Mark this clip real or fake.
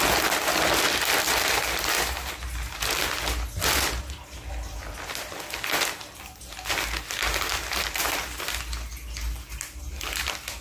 real